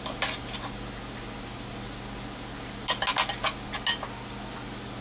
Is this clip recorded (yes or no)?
yes